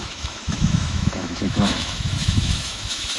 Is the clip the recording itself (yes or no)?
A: no